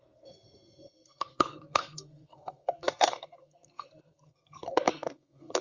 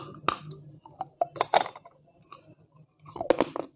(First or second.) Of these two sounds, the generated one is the first